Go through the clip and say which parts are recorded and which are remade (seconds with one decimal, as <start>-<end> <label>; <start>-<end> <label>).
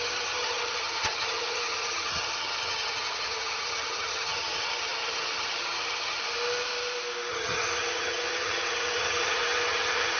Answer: 0.0-6.2 remade; 6.2-7.3 recorded; 7.3-10.2 remade